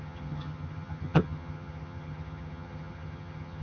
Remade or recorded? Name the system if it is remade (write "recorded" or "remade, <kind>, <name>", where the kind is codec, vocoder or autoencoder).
remade, vocoder, HiFi-GAN